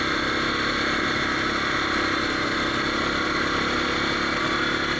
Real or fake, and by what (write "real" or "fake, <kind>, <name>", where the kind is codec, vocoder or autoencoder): real